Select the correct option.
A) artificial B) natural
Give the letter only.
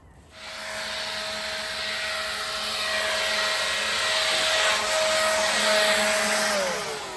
B